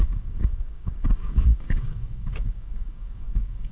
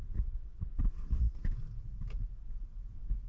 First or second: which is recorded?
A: second